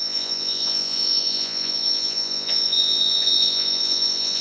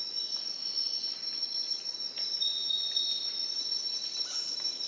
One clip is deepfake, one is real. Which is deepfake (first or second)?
first